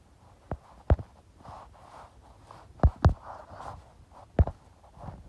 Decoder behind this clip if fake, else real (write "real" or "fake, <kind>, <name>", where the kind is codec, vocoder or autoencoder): real